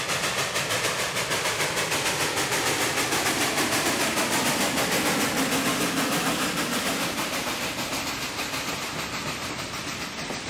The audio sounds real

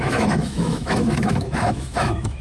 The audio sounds fake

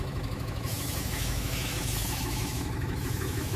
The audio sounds fake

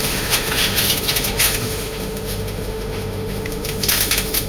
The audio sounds fake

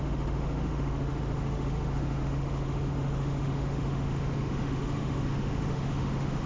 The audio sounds fake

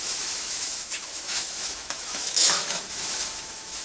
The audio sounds fake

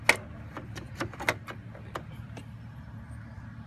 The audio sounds real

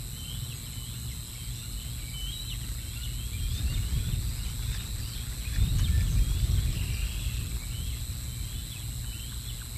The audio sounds real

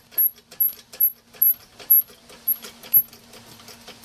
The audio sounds real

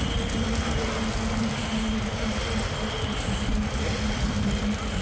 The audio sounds real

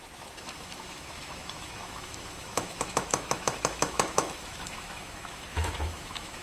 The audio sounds fake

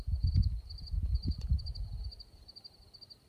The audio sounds real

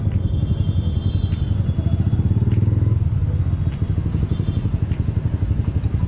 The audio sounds real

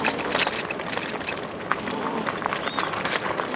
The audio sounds real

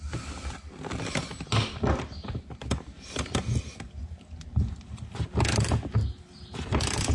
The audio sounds real